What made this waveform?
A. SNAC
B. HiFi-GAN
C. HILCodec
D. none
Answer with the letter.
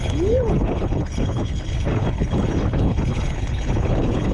C